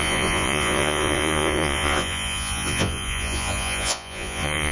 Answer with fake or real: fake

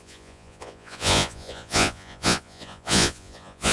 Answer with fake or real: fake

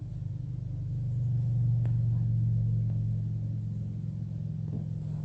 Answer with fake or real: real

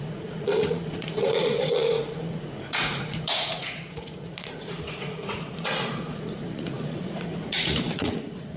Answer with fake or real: fake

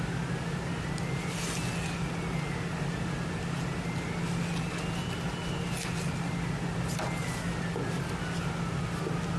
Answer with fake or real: real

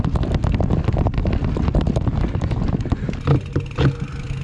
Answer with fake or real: real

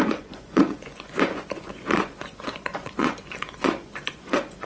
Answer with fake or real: fake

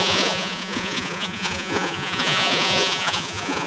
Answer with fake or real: fake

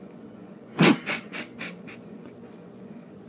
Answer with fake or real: fake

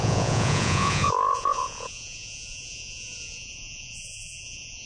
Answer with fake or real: fake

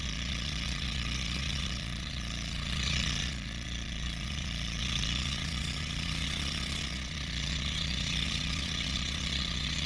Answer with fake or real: fake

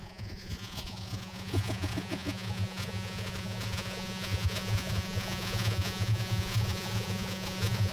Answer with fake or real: fake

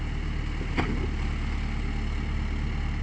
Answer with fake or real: real